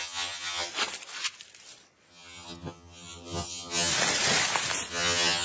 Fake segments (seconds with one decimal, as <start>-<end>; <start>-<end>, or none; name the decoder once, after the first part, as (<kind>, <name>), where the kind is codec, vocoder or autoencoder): 0.0-0.7 (vocoder, HiFi-GAN); 2.1-3.9; 4.9-5.4